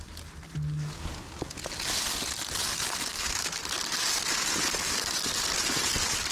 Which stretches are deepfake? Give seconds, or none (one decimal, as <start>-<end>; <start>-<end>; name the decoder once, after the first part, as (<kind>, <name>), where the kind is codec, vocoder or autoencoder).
3.1-3.6 (autoencoder, DAC-VAE)